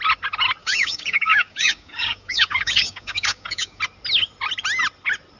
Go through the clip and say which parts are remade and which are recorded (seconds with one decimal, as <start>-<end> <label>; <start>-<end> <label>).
0.0-0.6 recorded; 0.6-3.8 remade; 3.8-5.4 recorded